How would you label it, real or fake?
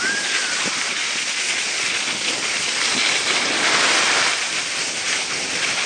real